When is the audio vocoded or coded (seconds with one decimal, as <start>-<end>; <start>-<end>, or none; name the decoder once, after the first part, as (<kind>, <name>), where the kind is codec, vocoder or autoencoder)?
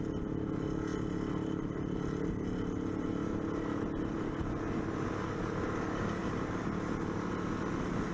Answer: none